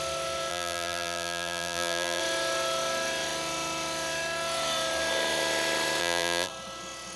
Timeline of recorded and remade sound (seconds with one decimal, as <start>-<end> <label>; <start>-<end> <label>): 0.0-0.5 recorded; 0.5-2.2 remade; 2.2-6.0 recorded; 6.0-6.5 remade; 6.5-7.2 recorded